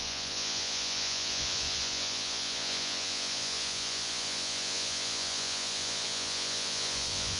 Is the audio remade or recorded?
remade